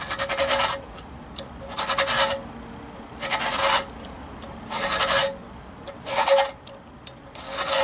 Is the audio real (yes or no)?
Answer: yes